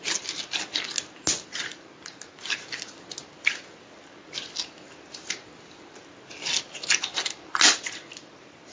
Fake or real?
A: real